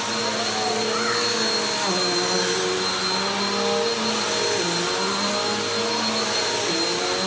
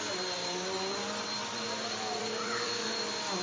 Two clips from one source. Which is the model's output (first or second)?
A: second